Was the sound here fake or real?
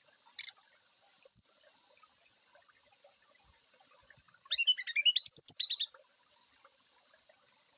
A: real